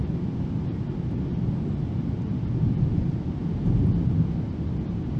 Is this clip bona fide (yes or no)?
yes